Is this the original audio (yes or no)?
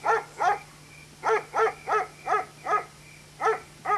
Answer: yes